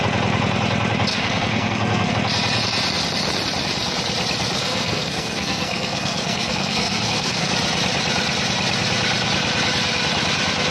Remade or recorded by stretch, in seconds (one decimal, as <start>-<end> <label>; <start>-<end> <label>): 0.0-1.1 recorded; 1.1-2.1 remade; 2.1-4.6 recorded; 4.6-7.5 remade; 7.5-10.7 recorded